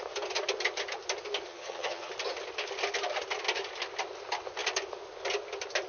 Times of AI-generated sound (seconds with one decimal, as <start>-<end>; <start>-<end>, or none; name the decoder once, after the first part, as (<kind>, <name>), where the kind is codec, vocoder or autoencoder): 1.5-2.1 (vocoder, HiFi-GAN)